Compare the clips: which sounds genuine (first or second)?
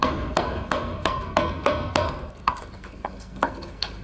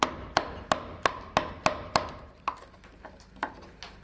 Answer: second